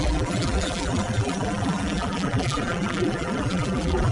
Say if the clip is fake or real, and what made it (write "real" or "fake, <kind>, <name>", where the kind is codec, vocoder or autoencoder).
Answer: fake, vocoder, BigVGAN v2